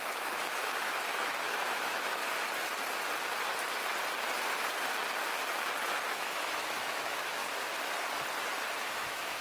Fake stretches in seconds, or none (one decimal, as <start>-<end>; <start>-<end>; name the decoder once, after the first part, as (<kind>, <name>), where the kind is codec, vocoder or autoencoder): 0.0-2.2 (autoencoder, DAC-VAE); 6.1-7.4; 8.8-9.4